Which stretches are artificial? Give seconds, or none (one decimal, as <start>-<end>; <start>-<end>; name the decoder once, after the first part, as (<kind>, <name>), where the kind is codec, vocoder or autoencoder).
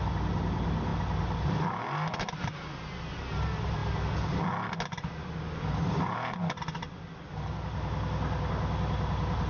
none